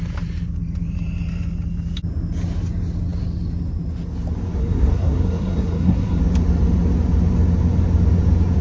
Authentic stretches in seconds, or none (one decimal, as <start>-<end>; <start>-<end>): 0.0-4.6; 6.2-8.6